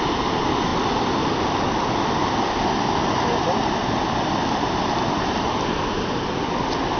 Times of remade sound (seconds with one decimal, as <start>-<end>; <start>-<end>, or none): none